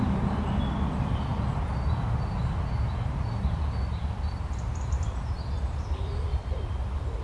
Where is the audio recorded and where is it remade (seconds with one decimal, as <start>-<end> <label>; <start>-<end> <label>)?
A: 0.0-7.2 recorded